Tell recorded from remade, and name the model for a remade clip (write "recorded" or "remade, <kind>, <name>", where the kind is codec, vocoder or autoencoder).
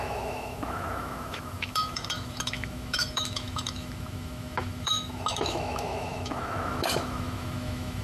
remade, autoencoder, DAC-VAE